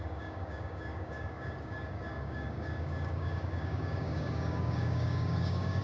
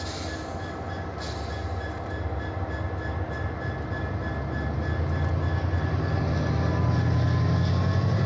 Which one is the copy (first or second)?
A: first